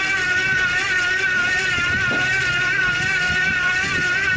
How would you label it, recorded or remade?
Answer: remade